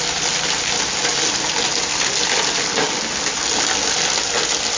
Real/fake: real